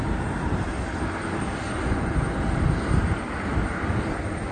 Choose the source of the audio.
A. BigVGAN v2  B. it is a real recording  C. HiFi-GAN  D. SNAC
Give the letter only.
B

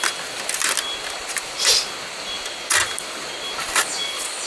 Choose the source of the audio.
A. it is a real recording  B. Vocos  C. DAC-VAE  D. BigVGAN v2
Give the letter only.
A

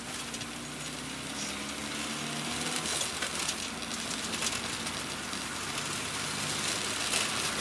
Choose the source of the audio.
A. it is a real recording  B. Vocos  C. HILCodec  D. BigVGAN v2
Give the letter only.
A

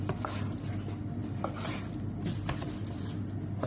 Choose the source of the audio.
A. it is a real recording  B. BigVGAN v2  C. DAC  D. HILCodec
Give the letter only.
A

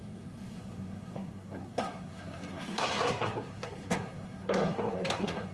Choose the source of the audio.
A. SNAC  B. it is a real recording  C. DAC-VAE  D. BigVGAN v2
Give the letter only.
A